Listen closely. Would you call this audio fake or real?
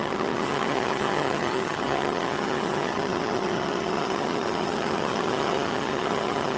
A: fake